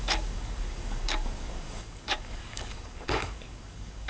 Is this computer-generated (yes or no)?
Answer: yes